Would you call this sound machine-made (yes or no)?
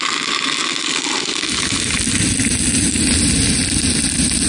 no